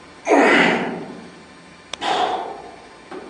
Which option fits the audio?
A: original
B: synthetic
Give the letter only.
A